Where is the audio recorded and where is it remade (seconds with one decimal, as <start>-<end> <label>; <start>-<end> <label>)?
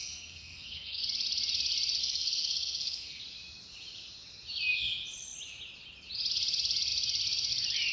0.0-1.0 remade; 1.0-2.0 recorded; 2.0-3.2 remade; 3.2-7.9 recorded